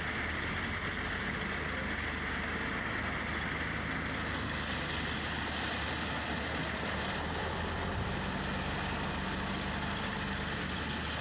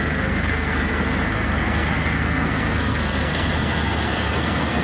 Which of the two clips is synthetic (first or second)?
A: second